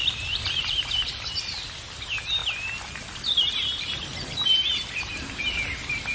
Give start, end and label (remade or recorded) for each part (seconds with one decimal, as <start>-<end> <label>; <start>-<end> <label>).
0.0-1.0 remade; 1.0-6.1 recorded